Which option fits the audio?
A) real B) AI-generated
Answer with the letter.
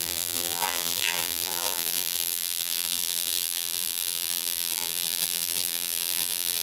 B